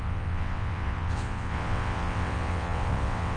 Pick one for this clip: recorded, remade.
remade